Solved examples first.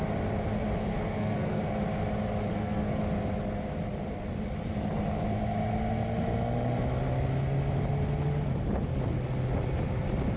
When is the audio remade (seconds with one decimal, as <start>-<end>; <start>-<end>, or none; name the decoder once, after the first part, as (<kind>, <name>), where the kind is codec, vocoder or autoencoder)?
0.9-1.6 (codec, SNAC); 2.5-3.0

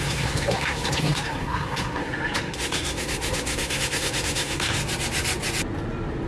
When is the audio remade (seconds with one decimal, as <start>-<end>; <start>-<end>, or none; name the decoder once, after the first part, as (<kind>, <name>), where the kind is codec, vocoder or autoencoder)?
0.0-4.8 (codec, SNAC)

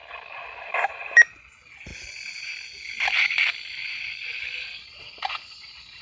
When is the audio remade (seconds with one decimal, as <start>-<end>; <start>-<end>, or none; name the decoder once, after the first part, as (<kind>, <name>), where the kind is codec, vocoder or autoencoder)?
none

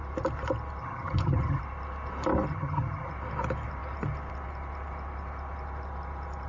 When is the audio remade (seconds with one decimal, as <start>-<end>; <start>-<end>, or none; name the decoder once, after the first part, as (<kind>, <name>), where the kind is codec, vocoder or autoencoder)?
0.8-1.6 (vocoder, HiFi-GAN); 2.5-3.1

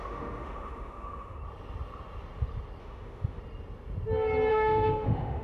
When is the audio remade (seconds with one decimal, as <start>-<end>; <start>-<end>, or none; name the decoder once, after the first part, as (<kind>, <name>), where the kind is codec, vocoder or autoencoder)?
0.0-1.4 (autoencoder, DAC-VAE); 2.8-3.4; 4.5-5.4